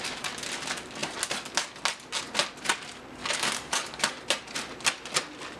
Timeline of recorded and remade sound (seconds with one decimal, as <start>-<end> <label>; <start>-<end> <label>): 0.0-3.2 recorded; 3.2-4.1 remade; 4.1-5.6 recorded